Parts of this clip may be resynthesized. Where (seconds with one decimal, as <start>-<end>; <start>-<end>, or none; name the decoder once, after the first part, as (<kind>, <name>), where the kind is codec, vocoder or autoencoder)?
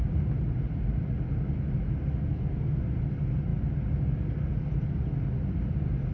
2.3-2.8 (codec, SNAC)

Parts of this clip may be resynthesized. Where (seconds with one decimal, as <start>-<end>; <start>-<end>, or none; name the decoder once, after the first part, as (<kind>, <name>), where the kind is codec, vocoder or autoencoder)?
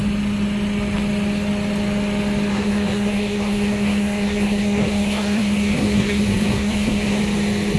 2.5-7.2 (codec, SNAC)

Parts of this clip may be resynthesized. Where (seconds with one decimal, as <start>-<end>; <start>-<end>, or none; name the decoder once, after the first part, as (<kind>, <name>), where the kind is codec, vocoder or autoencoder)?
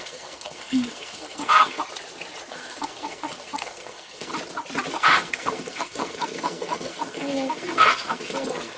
0.0-1.8 (codec, SNAC); 2.5-4.3; 4.9-8.8